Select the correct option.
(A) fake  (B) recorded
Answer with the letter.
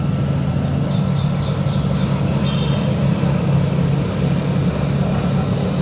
B